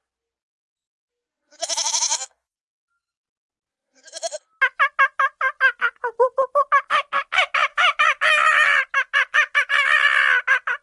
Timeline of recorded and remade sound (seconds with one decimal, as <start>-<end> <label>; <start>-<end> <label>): 0.0-1.5 recorded; 1.5-2.8 remade; 2.8-7.7 recorded; 7.7-8.2 remade; 8.2-10.8 recorded